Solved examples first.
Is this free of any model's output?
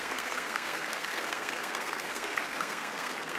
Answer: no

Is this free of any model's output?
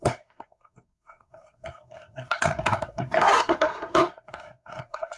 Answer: no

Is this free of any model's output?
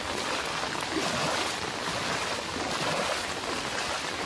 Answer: yes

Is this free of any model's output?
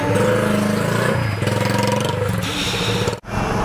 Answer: yes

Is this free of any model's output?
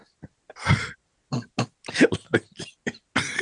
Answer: yes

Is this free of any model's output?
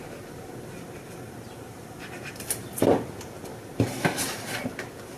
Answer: yes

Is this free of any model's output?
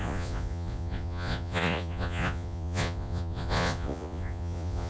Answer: no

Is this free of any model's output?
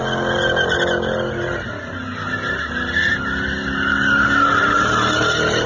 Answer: yes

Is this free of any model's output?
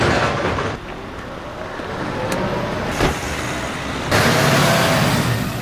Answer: yes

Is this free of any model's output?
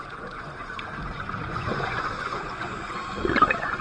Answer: no